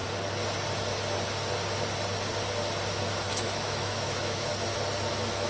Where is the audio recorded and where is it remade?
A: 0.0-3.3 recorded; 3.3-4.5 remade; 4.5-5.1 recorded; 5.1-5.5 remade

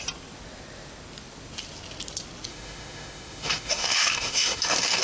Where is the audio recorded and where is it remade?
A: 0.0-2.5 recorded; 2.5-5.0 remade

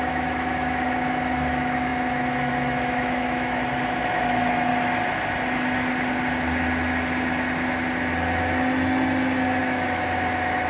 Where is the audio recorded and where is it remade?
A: 0.0-4.7 remade; 4.7-9.6 recorded; 9.6-10.7 remade

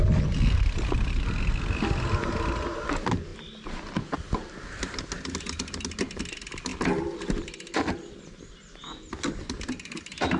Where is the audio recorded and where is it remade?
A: 0.0-10.4 recorded

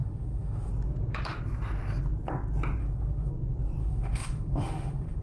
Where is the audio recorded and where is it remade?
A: 0.0-0.7 remade; 0.7-2.8 recorded; 2.8-3.3 remade; 3.3-3.8 recorded; 3.8-5.2 remade

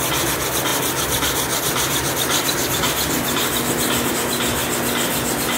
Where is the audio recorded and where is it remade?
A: 0.0-5.6 recorded